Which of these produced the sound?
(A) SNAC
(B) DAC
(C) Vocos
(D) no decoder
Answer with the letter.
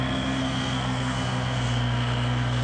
A